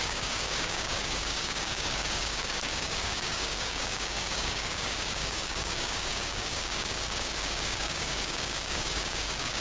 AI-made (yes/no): yes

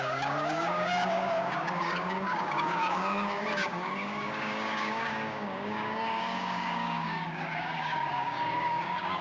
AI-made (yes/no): yes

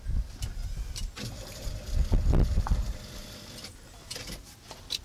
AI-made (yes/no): yes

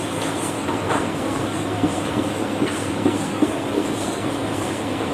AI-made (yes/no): yes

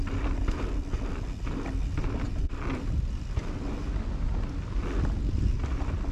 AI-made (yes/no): no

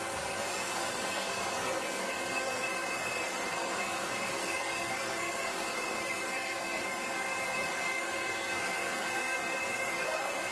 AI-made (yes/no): yes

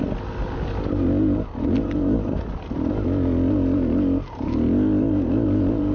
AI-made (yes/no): no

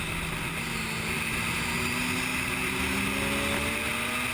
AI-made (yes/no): no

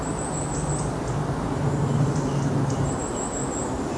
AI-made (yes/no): no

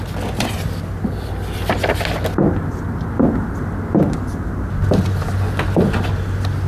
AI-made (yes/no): no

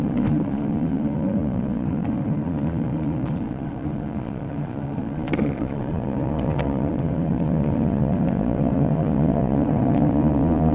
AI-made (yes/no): yes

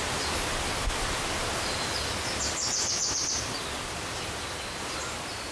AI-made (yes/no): no